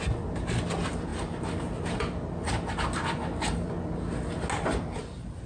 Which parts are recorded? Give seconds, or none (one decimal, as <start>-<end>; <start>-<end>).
0.0-5.5